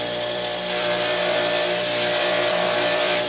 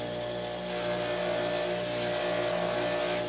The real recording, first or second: second